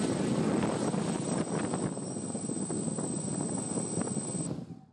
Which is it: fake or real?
real